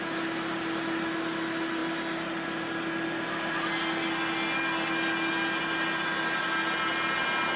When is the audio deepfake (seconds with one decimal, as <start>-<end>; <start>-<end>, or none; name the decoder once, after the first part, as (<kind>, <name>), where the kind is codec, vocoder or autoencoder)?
none